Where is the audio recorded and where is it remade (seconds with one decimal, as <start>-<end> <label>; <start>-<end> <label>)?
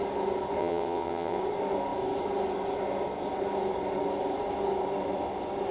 0.0-0.6 recorded; 0.6-1.4 remade; 1.4-5.7 recorded